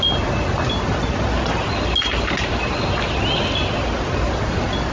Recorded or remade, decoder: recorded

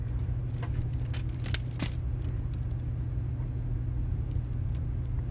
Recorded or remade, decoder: recorded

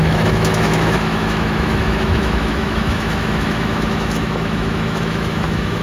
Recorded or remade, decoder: remade, autoencoder, DAC-VAE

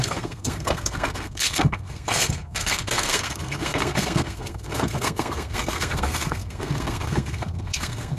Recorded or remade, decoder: remade, codec, SNAC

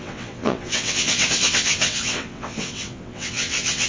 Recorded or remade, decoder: remade, vocoder, WaveNeXt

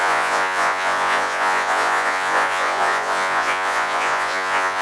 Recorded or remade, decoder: remade, vocoder, Vocos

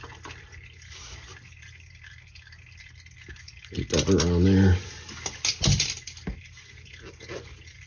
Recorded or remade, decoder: recorded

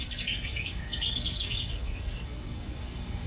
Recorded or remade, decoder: remade, codec, SNAC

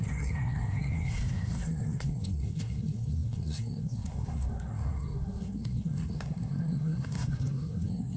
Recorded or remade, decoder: remade, codec, SNAC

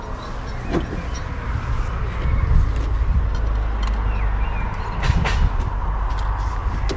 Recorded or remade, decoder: recorded